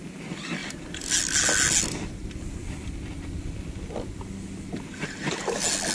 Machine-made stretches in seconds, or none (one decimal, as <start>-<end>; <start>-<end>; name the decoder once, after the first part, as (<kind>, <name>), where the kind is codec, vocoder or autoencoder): none

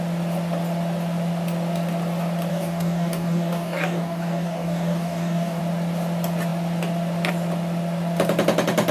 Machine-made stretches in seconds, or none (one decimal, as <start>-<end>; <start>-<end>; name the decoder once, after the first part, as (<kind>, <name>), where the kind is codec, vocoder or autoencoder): 2.5-5.6 (codec, DAC)

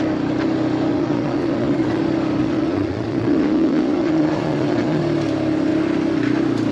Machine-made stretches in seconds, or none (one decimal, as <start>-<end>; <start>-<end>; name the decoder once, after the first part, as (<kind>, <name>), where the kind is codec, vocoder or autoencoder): 0.9-2.0 (vocoder, Vocos); 2.4-5.0

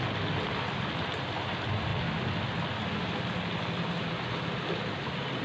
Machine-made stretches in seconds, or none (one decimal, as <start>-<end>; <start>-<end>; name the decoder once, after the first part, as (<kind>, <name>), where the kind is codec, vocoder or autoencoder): none

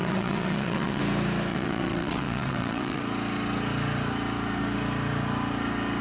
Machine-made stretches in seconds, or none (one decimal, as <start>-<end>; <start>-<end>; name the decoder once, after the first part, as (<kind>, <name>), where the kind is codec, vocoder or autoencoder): 0.0-1.0 (vocoder, WaveNeXt); 1.5-3.0